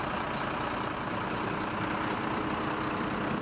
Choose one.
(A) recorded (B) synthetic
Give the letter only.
A